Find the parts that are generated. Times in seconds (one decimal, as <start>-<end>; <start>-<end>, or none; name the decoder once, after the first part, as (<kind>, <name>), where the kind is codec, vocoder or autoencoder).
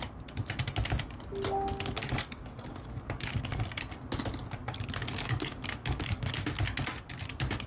2.0-3.6 (codec, DAC); 4.6-6.3